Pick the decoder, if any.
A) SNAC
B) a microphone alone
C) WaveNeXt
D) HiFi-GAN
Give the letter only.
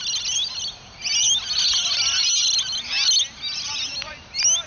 B